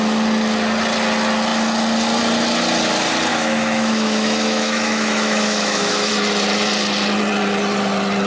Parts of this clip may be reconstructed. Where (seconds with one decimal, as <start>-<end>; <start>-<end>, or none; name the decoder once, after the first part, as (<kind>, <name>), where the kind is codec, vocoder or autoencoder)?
3.3-6.1 (autoencoder, DAC-VAE)